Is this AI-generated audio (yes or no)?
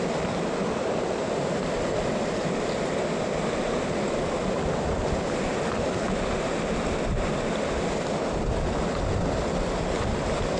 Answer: no